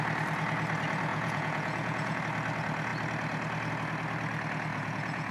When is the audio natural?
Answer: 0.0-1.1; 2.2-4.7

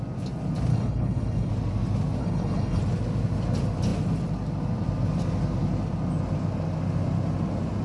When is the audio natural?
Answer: 0.0-0.7; 1.5-2.2; 2.8-7.8

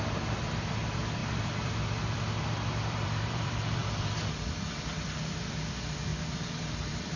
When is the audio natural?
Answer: none

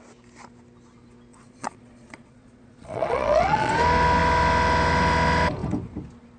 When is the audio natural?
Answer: 0.0-1.3; 3.7-6.4

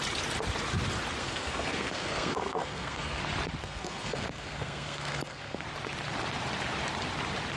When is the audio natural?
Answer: 0.0-1.2; 3.2-3.6; 5.6-7.6

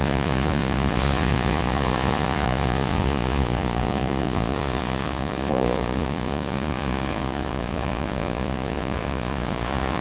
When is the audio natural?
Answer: none